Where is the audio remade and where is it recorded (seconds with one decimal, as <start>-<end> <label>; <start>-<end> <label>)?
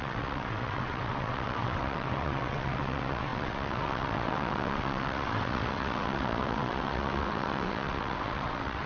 0.0-8.9 remade